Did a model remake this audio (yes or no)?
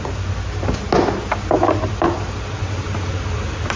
no